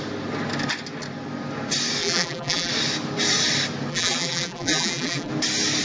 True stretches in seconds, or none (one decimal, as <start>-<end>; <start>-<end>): 0.0-2.0; 2.7-3.9; 5.3-5.8

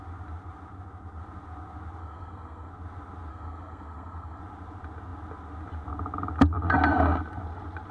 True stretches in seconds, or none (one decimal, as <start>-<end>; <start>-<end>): 0.0-2.0; 2.7-3.3; 4.4-7.9

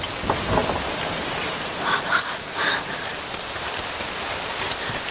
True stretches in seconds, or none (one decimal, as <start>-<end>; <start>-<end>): 0.0-0.6; 3.7-5.1

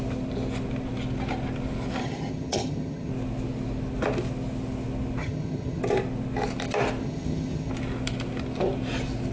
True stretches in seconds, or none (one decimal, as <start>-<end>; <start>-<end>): 0.0-2.0; 3.1-5.2; 5.8-7.0; 7.7-9.3

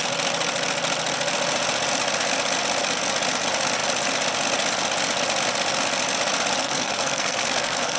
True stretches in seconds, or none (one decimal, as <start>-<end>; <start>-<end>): 0.0-6.6

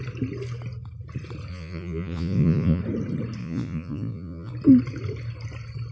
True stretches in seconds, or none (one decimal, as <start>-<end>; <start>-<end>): 0.0-1.5; 2.8-3.4; 4.5-5.9

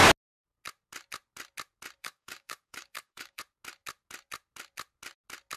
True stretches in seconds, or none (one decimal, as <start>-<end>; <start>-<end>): 0.0-2.0; 3.4-5.6